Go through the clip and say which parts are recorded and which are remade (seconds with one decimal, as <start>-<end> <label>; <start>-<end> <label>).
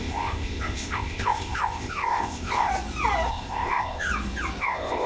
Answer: 0.0-2.7 remade; 2.7-3.3 recorded; 3.3-4.1 remade; 4.1-4.6 recorded; 4.6-5.1 remade